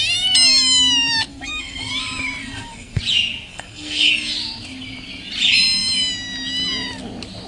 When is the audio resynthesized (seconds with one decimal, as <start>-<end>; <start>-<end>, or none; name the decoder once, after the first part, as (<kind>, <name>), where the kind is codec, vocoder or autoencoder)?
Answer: 1.3-1.9 (codec, SNAC); 2.4-3.0; 3.5-4.1